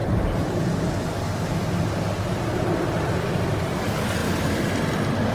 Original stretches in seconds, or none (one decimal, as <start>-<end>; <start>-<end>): 3.2-5.3